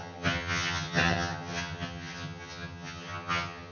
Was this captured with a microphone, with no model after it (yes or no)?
no